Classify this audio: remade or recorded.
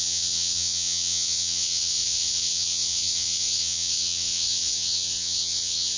remade